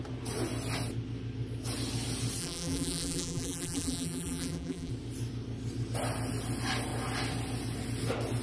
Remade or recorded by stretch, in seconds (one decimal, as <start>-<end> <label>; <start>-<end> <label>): 0.0-2.4 recorded; 2.4-4.9 remade; 4.9-8.4 recorded